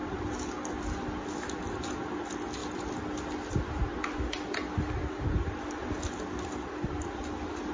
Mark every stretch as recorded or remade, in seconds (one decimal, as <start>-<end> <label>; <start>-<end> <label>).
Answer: 0.0-7.7 recorded